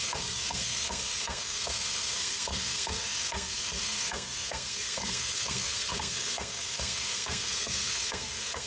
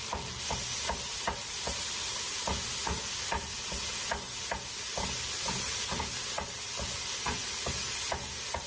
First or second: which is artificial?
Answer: first